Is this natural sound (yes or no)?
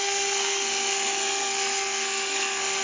no